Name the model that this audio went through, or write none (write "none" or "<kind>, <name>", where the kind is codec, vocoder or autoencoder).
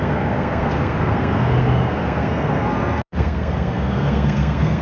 codec, SNAC